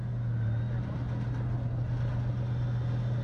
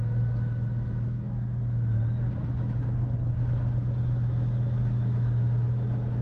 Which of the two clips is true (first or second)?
first